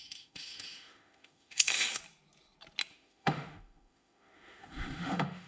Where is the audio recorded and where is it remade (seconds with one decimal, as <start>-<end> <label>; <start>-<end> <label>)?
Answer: 0.0-2.0 remade; 2.0-2.9 recorded; 2.9-5.5 remade